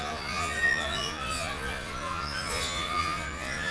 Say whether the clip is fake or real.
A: fake